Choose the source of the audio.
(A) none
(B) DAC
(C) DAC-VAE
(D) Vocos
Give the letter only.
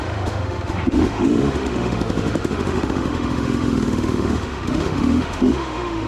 C